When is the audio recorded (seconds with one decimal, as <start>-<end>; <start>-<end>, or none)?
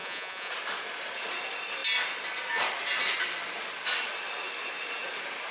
0.5-5.5